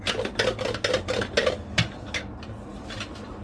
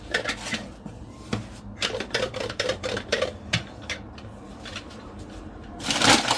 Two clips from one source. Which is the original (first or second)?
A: first